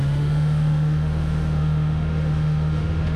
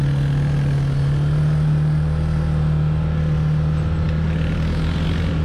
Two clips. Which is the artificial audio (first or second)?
first